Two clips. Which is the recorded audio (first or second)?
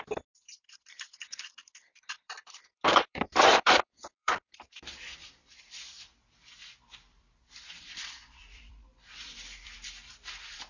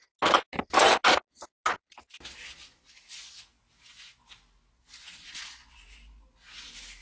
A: second